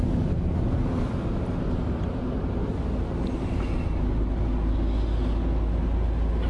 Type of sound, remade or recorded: recorded